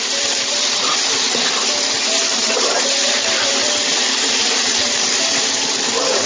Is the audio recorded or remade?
remade